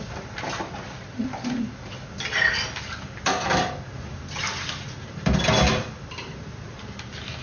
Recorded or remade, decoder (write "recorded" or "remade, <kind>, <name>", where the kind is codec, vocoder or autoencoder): recorded